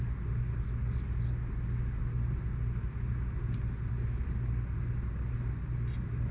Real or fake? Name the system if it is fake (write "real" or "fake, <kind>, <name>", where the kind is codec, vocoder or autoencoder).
real